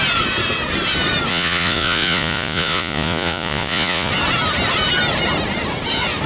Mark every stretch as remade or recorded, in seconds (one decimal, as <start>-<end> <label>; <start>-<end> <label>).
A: 0.0-1.3 recorded; 1.3-4.1 remade; 4.1-6.3 recorded